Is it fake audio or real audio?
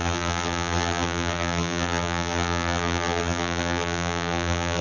fake